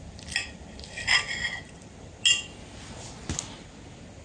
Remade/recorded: recorded